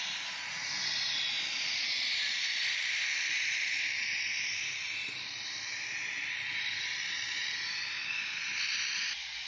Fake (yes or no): no